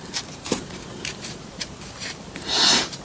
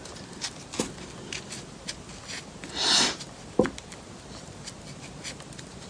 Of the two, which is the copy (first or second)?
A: first